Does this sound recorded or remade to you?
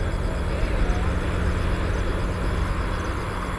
recorded